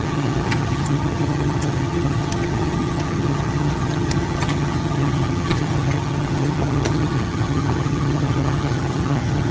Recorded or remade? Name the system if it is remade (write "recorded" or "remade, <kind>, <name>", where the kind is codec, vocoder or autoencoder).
remade, vocoder, HiFi-GAN